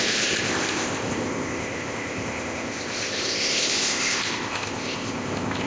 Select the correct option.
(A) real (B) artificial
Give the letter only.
B